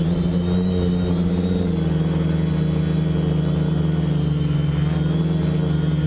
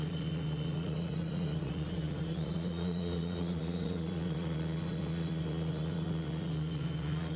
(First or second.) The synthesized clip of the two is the second